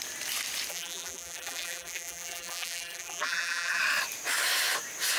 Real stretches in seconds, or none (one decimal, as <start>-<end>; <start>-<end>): 0.0-0.7; 3.8-5.2